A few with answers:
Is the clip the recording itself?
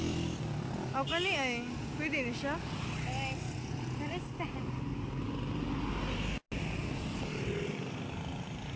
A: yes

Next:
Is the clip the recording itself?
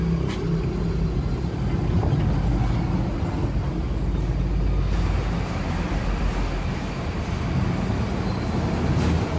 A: yes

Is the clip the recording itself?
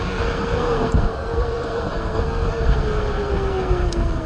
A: no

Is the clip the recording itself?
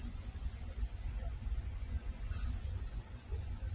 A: no